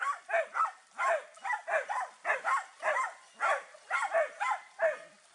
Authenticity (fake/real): real